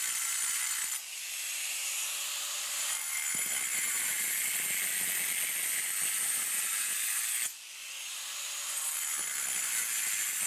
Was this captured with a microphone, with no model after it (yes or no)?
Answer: yes